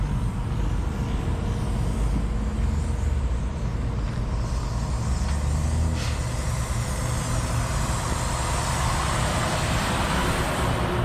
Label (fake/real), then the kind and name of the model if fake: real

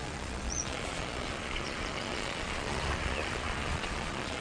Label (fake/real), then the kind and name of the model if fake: fake, vocoder, Vocos